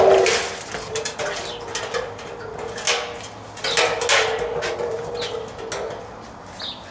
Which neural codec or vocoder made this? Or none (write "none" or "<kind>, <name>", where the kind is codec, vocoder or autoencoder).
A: none